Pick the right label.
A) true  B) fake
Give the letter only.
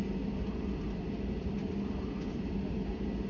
A